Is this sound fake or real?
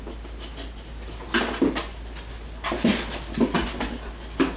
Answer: real